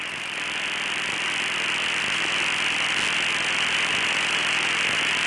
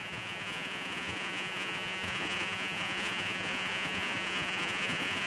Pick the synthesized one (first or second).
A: second